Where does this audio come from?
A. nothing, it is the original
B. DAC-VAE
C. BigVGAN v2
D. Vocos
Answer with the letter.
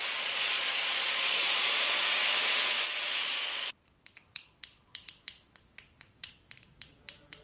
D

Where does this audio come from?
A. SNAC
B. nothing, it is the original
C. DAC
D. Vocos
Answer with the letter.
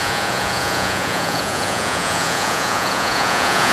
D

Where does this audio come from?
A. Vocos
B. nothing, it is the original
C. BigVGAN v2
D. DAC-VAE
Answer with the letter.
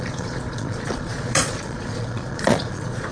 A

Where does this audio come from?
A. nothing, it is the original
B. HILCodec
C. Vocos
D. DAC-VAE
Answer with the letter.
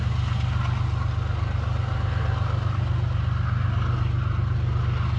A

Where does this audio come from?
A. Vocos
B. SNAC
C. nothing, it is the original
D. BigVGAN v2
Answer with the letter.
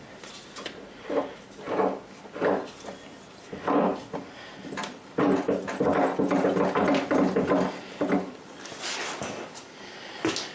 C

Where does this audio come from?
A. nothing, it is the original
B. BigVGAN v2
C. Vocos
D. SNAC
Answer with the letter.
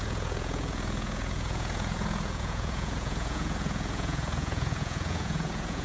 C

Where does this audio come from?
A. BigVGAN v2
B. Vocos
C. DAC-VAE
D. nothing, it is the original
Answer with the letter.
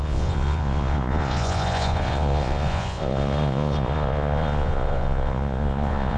B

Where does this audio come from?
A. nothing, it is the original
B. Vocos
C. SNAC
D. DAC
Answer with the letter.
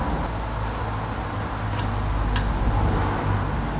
A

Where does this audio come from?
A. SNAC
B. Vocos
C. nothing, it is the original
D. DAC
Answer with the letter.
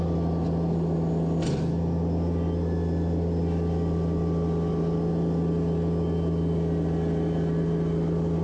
C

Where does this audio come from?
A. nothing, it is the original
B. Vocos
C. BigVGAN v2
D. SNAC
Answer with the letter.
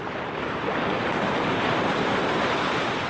A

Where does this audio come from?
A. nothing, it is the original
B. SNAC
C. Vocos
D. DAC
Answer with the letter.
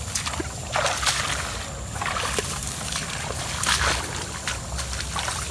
A